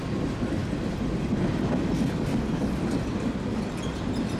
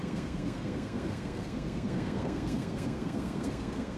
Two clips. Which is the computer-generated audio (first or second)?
second